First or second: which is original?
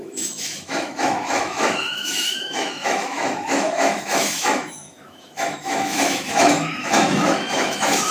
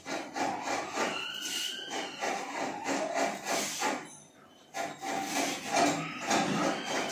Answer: second